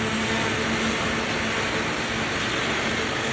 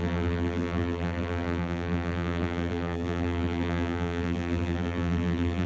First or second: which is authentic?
first